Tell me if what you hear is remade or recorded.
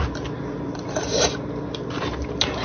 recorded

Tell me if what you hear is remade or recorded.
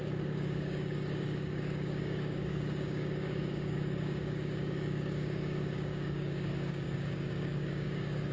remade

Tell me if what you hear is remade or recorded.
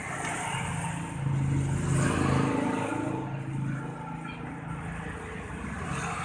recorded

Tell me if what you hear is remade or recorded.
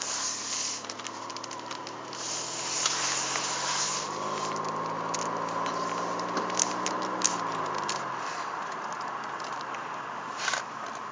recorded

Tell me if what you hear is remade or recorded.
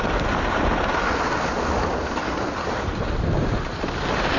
recorded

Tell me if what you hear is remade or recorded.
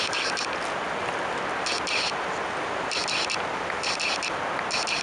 recorded